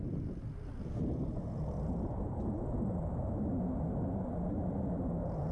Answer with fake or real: real